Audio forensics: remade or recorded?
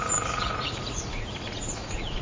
remade